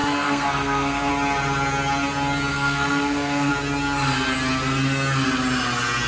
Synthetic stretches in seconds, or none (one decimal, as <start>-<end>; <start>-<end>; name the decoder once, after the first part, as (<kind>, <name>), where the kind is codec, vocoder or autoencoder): 0.0-1.1 (codec, SNAC); 2.5-3.5